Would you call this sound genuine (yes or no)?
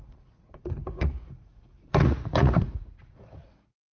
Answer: no